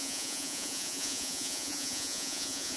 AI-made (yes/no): yes